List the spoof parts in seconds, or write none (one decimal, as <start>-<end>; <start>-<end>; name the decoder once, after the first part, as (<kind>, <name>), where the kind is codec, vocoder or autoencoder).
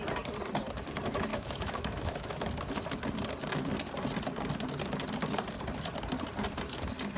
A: 1.3-2.5 (autoencoder, DAC-VAE)